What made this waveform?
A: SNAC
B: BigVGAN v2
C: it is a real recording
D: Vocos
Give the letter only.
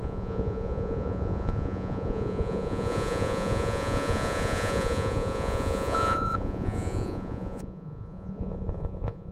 D